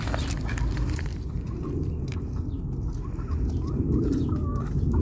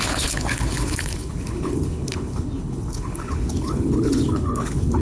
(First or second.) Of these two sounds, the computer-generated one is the second